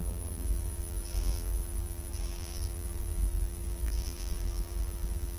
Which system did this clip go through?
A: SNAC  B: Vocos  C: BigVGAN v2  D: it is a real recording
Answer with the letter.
C